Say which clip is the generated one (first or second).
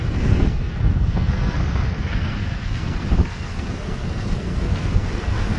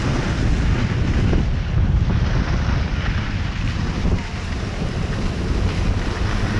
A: first